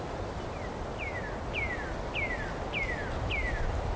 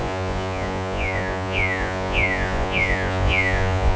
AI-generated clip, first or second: second